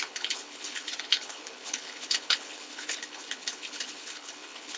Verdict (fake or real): fake